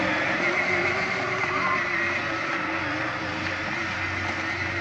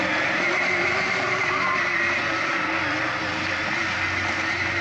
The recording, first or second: first